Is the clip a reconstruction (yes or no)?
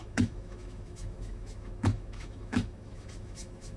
yes